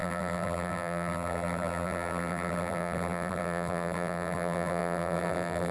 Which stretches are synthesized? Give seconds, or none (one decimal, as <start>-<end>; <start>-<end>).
0.0-5.7